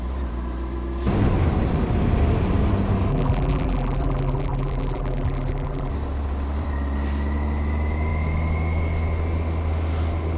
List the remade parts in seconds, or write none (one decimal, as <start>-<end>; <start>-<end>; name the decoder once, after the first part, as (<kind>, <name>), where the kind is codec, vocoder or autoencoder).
3.1-5.9 (vocoder, BigVGAN v2)